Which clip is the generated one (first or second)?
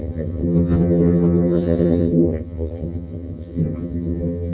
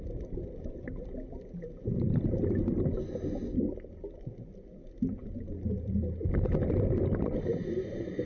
first